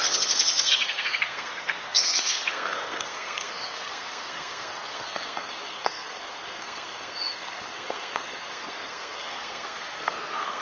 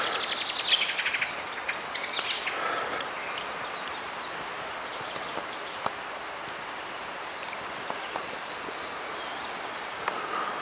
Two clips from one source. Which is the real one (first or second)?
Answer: second